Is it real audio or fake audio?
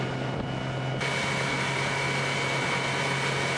real